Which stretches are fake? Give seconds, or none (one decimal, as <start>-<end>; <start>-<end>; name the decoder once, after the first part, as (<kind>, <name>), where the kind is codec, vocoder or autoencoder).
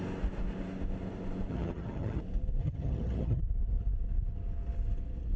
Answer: 1.5-2.2 (vocoder, HiFi-GAN); 2.6-3.4